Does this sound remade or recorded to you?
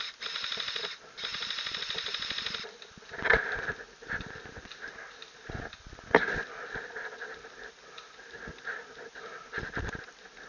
recorded